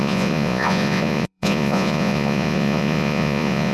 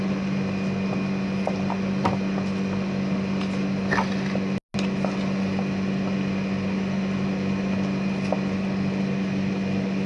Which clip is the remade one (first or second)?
first